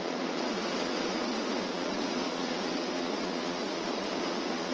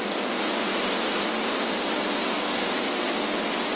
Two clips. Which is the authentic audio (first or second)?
second